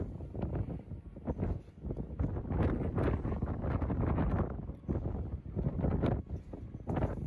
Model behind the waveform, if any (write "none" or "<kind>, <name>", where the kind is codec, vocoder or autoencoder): none